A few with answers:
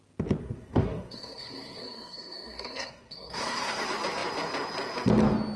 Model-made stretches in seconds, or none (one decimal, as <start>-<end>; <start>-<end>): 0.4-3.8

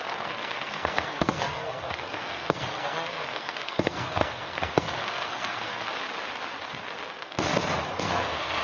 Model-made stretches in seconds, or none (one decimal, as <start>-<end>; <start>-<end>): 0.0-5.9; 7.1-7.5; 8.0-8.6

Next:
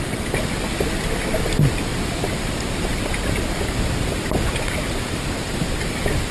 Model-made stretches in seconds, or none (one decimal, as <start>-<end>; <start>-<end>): none